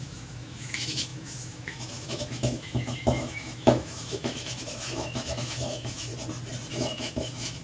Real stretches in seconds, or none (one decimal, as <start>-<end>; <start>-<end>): 6.1-6.7